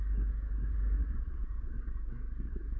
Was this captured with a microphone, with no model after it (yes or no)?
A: no